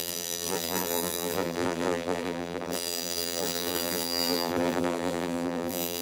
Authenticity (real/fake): fake